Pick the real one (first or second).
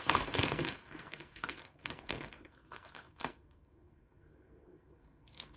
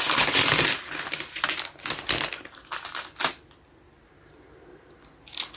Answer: second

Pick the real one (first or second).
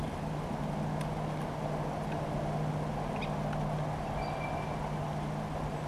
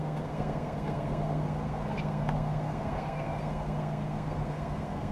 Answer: first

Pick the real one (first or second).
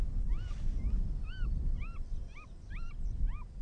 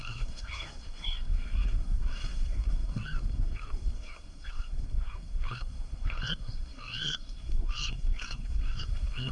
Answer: first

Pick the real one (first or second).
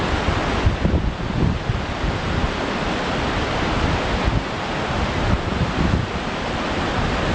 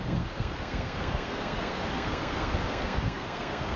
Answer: first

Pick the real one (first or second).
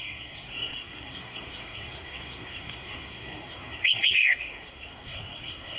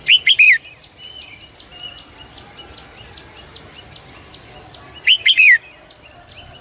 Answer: second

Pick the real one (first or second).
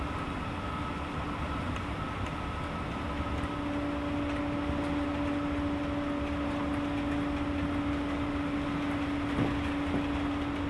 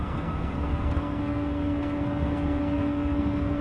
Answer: first